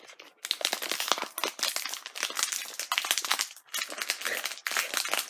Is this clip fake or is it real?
real